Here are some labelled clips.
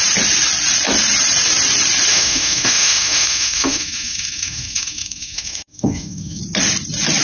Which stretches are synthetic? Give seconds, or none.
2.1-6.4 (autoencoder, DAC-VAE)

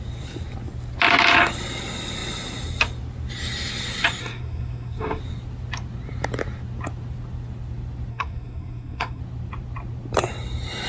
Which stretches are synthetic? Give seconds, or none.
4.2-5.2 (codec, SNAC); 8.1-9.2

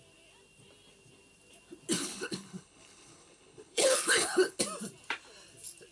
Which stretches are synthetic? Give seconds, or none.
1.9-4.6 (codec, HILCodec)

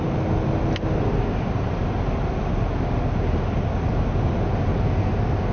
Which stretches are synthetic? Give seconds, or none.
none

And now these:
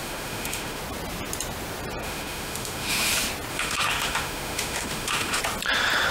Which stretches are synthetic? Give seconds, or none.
0.0-0.8 (autoencoder, DAC-VAE); 2.0-3.1; 3.5-5.4

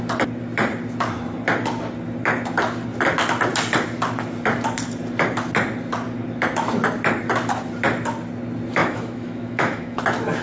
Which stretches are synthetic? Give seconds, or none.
8.8-10.0 (autoencoder, DAC-VAE)

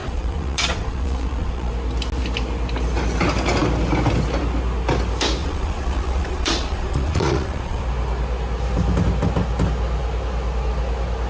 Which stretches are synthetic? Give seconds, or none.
0.0-1.7 (vocoder, Vocos); 5.4-7.8

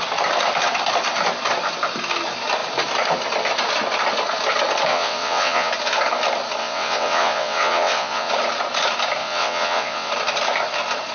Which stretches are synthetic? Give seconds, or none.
4.9-5.7 (vocoder, WaveNeXt); 6.6-8.3; 9.2-10.1